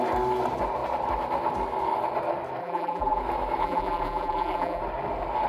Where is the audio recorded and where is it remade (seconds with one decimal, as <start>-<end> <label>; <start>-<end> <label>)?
0.0-2.6 recorded; 2.6-3.2 remade; 3.2-3.6 recorded; 3.6-4.8 remade; 4.8-5.5 recorded